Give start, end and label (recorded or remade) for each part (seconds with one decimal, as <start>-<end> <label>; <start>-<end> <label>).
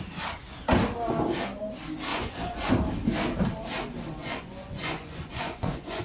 0.0-2.1 recorded; 2.1-2.7 remade; 2.7-4.2 recorded; 4.2-6.0 remade